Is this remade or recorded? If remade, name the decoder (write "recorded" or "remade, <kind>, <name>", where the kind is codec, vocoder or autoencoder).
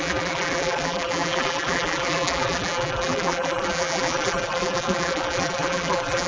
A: remade, vocoder, BigVGAN v2